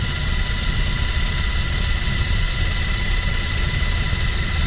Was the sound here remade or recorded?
recorded